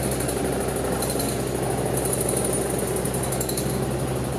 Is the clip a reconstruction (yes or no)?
no